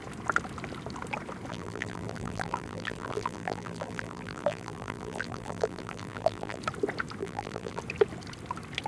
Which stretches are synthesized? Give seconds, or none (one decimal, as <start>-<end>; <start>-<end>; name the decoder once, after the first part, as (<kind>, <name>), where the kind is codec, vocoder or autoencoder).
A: 1.5-6.6 (vocoder, BigVGAN v2); 7.2-7.8